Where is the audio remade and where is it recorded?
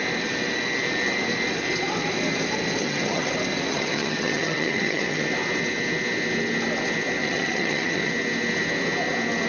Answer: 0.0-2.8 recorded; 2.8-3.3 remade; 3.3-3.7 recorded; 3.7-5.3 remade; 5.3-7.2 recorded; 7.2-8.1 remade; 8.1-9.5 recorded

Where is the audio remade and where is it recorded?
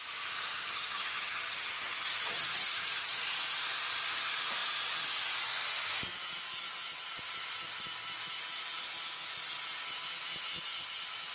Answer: 0.0-0.5 recorded; 0.5-3.2 remade; 3.2-11.3 recorded